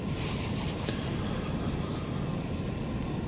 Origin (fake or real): real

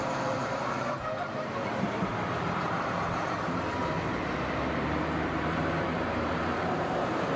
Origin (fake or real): fake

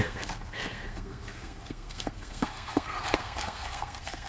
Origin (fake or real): fake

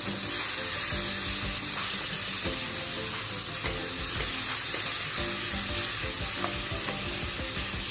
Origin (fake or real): real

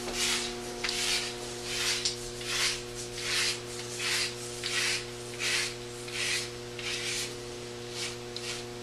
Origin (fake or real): fake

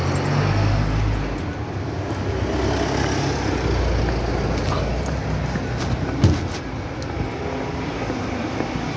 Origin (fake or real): real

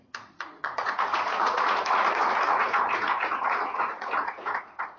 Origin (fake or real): fake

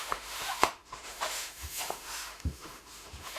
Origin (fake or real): fake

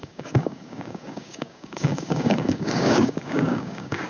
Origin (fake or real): fake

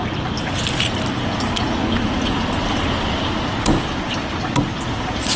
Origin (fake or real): real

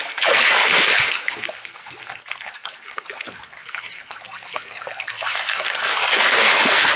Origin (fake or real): fake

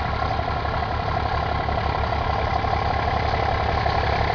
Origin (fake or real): real